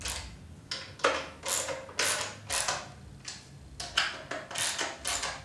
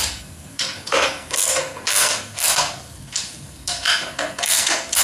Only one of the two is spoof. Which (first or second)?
second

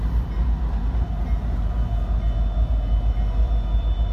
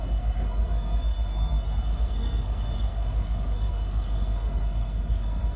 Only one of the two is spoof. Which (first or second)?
second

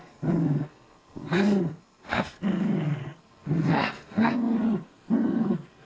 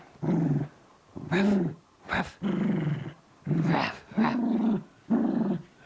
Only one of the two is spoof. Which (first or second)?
first